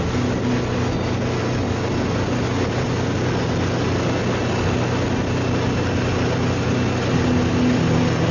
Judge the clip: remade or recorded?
recorded